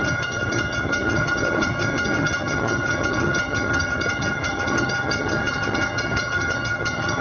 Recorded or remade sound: remade